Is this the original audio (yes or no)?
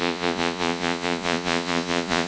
no